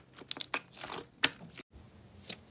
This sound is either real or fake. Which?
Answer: real